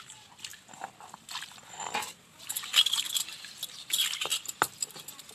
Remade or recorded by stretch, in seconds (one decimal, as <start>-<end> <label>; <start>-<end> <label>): 0.0-5.3 recorded